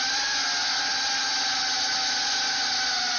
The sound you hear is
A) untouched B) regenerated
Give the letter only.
A